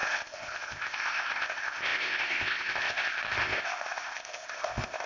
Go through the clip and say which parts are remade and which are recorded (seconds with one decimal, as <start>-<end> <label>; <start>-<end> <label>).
0.0-5.1 remade